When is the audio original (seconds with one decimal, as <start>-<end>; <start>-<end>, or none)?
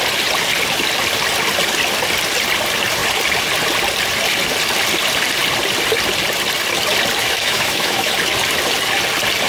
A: 0.0-7.2; 8.1-9.5